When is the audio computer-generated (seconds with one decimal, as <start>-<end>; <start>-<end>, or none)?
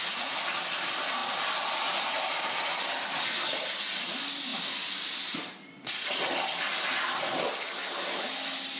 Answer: none